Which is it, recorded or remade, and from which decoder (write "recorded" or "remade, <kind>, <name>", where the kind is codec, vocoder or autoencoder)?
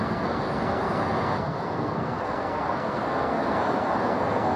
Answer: remade, codec, SNAC